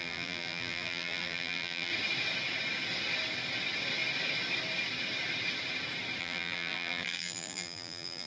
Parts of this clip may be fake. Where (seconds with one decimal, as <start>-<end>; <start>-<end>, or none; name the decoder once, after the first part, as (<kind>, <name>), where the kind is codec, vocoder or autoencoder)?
0.0-1.9 (vocoder, BigVGAN v2); 6.2-8.3